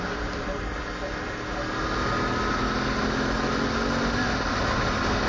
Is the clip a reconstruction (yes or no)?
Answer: no